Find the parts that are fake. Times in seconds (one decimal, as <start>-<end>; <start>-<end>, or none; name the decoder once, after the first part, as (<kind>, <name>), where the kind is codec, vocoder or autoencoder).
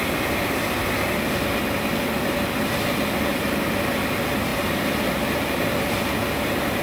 4.5-5.1 (vocoder, BigVGAN v2)